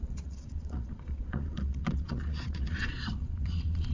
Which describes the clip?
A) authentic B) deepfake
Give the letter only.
B